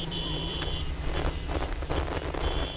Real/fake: real